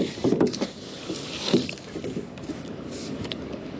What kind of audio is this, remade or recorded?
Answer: remade